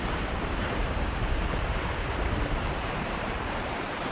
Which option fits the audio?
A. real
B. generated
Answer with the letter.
B